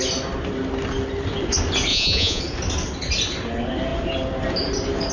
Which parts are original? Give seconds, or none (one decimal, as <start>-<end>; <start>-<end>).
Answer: 0.0-1.9; 2.4-5.1